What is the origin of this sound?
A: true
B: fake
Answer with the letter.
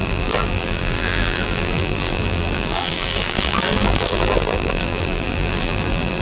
B